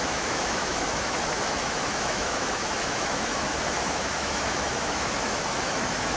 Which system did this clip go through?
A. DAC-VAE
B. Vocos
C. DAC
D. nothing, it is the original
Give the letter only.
A